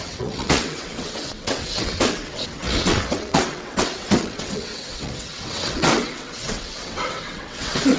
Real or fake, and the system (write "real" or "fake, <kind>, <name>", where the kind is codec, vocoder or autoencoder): fake, vocoder, WaveNeXt